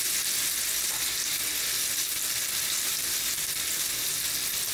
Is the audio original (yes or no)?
yes